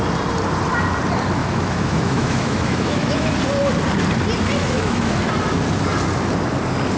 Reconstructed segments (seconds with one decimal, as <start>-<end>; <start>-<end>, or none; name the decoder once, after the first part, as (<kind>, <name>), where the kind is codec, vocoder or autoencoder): 1.4-3.3 (autoencoder, DAC-VAE); 4.6-5.2